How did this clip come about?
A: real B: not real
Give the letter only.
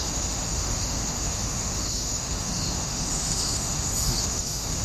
B